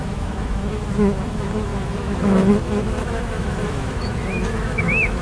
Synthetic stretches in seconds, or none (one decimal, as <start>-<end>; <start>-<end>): 0.0-5.2